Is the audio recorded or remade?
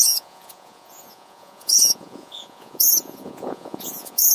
remade